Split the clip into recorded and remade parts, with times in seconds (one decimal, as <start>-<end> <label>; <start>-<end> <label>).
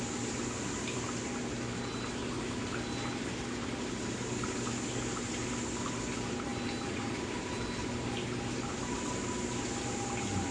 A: 0.0-10.5 recorded